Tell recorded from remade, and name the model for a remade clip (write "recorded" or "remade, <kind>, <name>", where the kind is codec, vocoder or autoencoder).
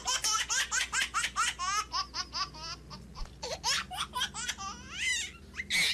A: recorded